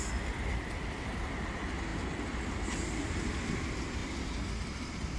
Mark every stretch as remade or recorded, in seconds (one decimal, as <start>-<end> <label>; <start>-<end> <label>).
0.0-4.0 recorded; 4.0-5.2 remade